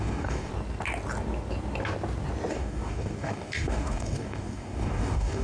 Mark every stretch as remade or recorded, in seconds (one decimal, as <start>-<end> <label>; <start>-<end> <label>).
0.0-0.5 remade; 0.5-2.5 recorded; 2.5-5.4 remade